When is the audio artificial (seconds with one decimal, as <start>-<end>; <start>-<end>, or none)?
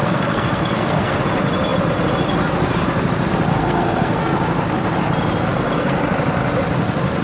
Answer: 0.0-1.2; 3.5-4.2; 5.5-6.0